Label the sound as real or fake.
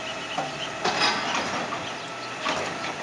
real